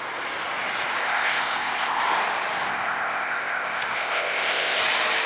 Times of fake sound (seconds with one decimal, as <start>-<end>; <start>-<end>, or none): 1.0-2.0; 2.7-4.8